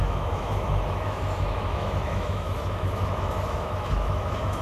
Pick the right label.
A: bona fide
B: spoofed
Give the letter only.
B